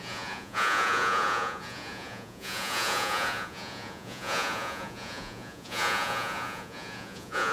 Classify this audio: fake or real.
fake